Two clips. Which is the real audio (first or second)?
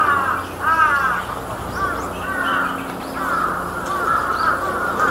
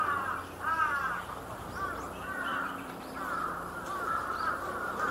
first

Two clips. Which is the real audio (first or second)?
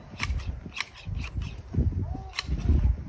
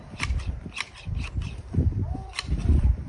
first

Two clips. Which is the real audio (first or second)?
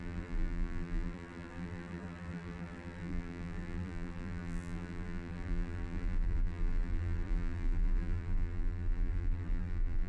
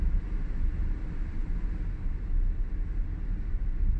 second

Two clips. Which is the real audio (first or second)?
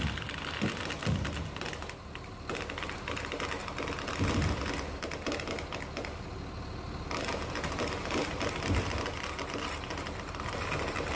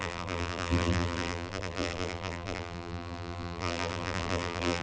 first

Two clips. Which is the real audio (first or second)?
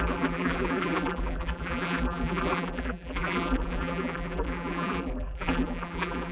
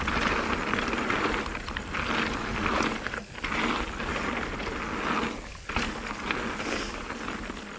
second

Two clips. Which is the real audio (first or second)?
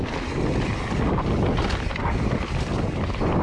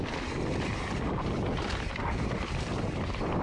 first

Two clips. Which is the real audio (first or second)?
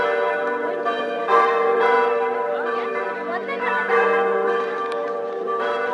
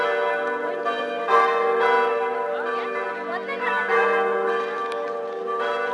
second